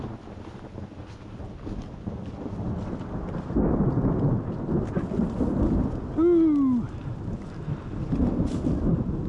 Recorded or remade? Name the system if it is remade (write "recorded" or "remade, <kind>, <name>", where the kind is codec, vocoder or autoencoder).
recorded